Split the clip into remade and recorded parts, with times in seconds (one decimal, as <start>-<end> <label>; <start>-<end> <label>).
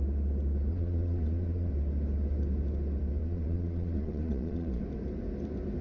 0.0-0.7 recorded; 0.7-1.7 remade; 1.7-3.2 recorded; 3.2-4.8 remade; 4.8-5.8 recorded